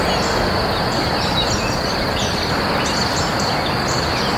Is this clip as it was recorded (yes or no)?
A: yes